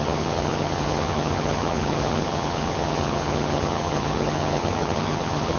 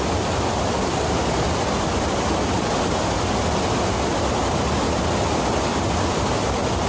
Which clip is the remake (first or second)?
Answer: first